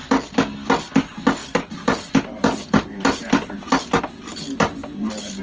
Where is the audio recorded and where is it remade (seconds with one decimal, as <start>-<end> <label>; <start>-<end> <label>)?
0.0-1.4 recorded; 1.4-4.0 remade; 4.0-4.8 recorded; 4.8-5.4 remade